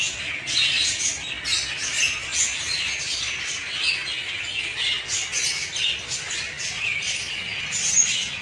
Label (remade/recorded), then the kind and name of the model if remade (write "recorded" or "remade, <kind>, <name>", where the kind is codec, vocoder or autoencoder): recorded